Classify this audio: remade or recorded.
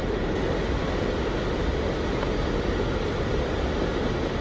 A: recorded